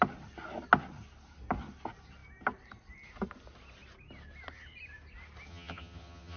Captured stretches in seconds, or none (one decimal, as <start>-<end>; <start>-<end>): 0.0-5.5